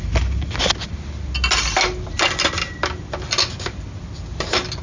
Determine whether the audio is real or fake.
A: real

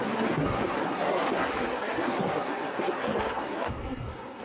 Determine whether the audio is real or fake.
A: fake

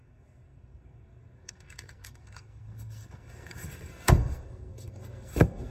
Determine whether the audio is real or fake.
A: fake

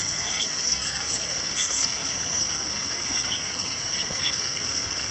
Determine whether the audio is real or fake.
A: fake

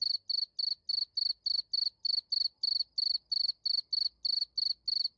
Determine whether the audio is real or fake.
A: real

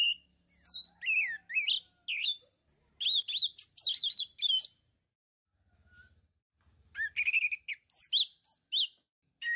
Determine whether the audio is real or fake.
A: real